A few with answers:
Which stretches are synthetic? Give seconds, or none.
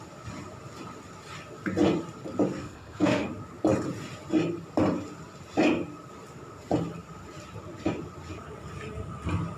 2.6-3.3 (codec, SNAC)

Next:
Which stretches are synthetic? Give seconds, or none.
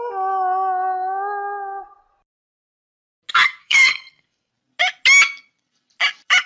3.6-4.5 (codec, SNAC)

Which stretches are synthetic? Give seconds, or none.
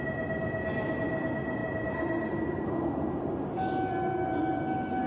none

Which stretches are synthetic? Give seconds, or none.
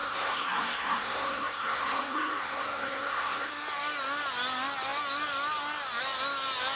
0.0-3.5 (codec, SNAC)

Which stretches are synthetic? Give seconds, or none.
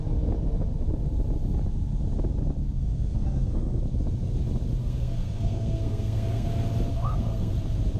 2.6-3.8 (codec, SNAC); 4.8-6.5; 6.9-7.5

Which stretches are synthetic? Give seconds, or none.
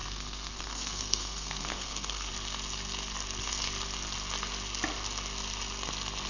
0.0-2.3 (codec, SNAC)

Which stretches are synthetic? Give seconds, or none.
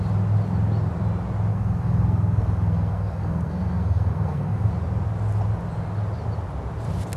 1.5-4.7 (codec, SNAC)